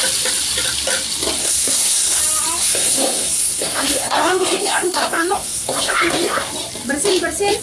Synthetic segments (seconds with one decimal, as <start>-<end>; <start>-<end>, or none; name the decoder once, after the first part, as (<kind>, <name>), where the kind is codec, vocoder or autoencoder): 1.4-2.2 (codec, SNAC); 2.6-6.5